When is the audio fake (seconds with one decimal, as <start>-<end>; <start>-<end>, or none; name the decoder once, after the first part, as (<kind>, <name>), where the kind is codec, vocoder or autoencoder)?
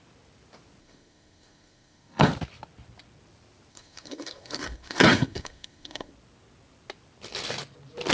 0.8-2.3 (codec, SNAC); 3.7-6.1